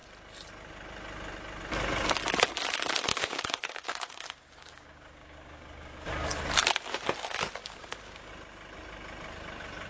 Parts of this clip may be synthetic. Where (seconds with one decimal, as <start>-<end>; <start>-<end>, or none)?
3.1-6.4; 7.6-8.3